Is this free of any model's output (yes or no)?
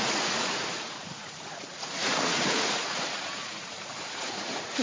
no